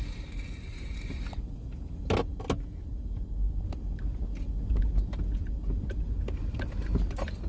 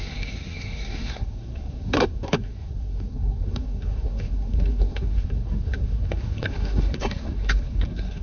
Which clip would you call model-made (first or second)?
second